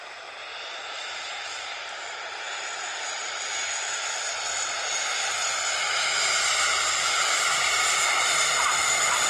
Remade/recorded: remade